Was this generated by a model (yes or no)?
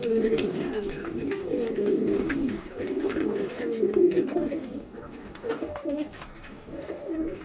yes